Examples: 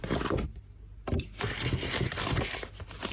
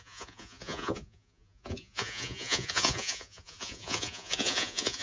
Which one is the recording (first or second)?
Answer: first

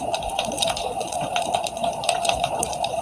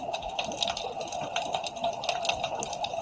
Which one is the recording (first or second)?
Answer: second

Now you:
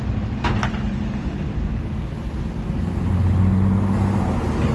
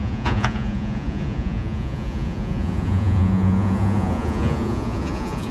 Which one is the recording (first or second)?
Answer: first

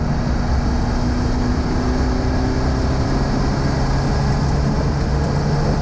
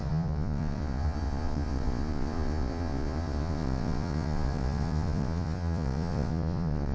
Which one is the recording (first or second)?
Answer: first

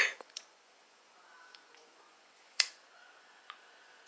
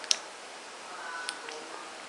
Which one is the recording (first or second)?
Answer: second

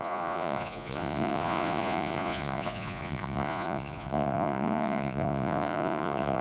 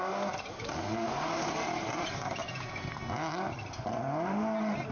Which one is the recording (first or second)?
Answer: second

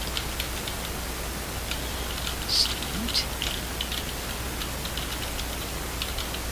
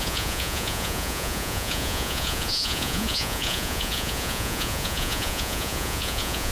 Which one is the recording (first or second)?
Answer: first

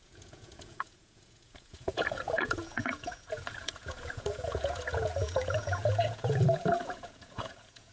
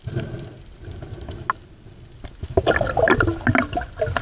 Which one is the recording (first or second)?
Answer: second